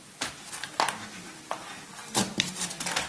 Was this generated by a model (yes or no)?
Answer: no